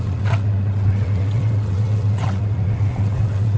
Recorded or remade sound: remade